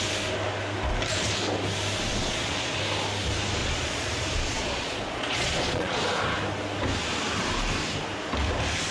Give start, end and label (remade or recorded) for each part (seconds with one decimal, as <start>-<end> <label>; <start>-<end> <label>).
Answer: 0.0-2.1 recorded; 2.1-2.8 remade; 2.8-3.6 recorded; 3.6-6.0 remade; 6.0-8.9 recorded

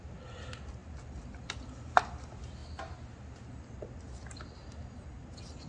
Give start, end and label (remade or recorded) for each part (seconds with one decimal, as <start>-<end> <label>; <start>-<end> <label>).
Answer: 0.0-5.7 recorded

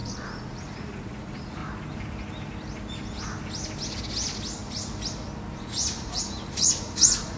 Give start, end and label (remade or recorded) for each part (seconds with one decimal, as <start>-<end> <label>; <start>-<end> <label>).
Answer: 0.0-1.6 remade; 1.6-5.6 recorded; 5.6-7.4 remade

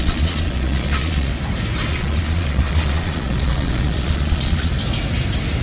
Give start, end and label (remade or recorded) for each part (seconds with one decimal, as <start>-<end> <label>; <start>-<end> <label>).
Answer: 0.0-1.3 remade; 1.3-1.9 recorded; 1.9-4.7 remade; 4.7-5.6 recorded

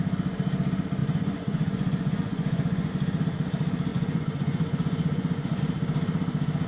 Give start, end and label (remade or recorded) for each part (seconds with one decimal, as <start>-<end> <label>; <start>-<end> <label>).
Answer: 0.0-1.0 recorded; 1.0-2.9 remade; 2.9-3.9 recorded; 3.9-5.6 remade; 5.6-6.7 recorded